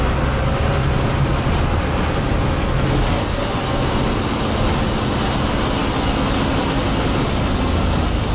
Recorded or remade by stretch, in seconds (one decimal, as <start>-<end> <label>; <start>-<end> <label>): 0.0-8.3 recorded